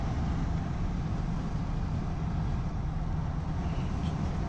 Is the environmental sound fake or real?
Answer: real